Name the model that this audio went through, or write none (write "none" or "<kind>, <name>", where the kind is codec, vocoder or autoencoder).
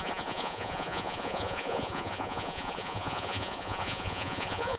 vocoder, Vocos